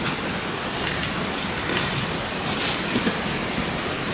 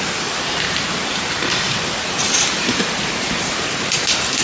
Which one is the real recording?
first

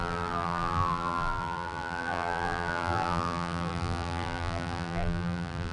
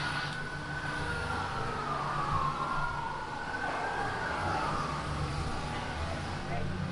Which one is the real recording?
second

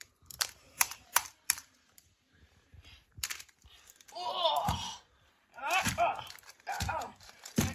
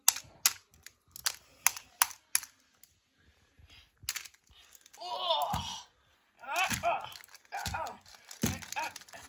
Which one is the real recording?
second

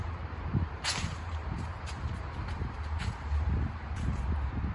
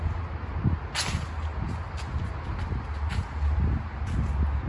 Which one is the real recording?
second